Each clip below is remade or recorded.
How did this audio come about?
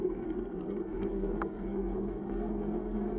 remade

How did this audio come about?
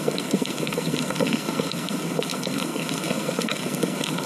remade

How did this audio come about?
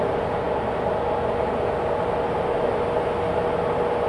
recorded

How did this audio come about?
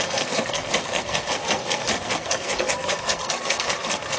remade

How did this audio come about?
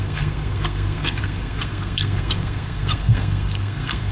remade